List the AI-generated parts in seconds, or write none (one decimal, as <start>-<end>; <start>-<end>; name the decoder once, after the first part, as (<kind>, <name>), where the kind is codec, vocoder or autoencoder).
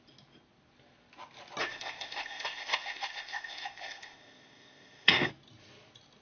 1.6-5.3 (codec, ZipCodec)